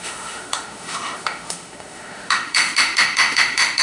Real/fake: fake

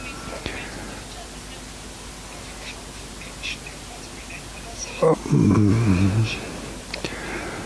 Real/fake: real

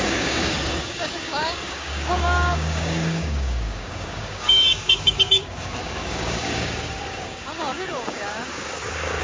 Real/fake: fake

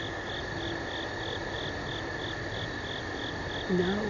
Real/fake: real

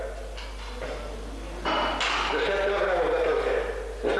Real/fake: real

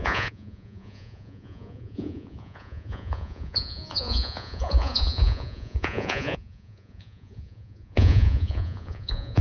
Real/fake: fake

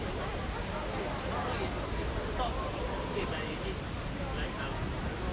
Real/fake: fake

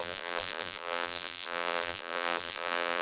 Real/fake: fake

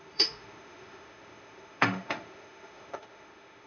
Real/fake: fake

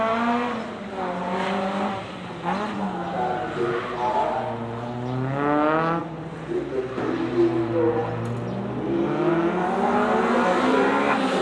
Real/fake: real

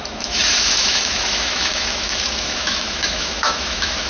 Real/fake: fake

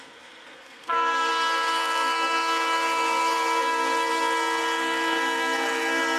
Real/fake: fake